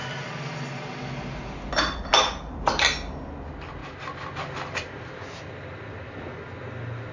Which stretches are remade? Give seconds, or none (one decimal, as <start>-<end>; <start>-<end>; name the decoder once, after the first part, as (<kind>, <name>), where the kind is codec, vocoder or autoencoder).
3.8-6.3 (vocoder, BigVGAN v2)